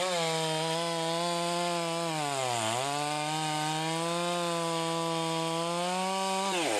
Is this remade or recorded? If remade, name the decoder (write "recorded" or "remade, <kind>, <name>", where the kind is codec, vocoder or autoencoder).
recorded